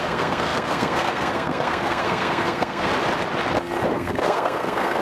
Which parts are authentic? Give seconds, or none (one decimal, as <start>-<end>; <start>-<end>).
2.9-3.9